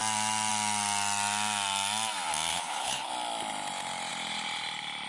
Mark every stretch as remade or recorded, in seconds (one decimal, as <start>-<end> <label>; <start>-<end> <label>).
0.0-2.5 recorded; 2.5-3.1 remade; 3.1-5.1 recorded

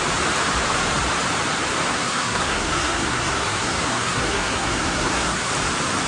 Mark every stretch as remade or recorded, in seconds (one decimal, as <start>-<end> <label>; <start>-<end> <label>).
0.0-1.9 recorded; 1.9-5.5 remade; 5.5-6.1 recorded

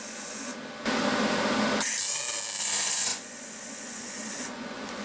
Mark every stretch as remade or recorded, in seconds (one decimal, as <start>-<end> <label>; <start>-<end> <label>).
0.0-0.5 remade; 0.5-2.6 recorded; 2.6-5.0 remade

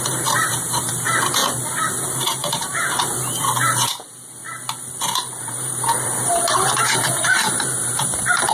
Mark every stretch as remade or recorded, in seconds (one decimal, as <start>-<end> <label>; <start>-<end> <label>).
0.0-1.4 remade; 1.4-1.9 recorded; 1.9-4.4 remade; 4.4-5.4 recorded; 5.4-8.5 remade